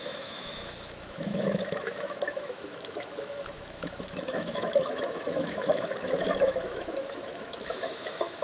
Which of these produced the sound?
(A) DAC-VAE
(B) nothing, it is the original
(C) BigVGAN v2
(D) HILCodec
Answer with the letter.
A